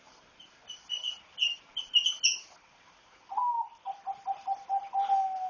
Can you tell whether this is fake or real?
real